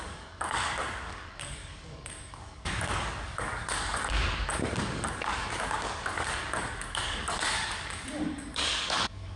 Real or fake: fake